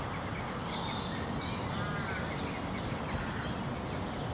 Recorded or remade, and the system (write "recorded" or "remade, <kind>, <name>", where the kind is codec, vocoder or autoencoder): recorded